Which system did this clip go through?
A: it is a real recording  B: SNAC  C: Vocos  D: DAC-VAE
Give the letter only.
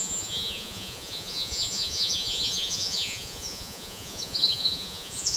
C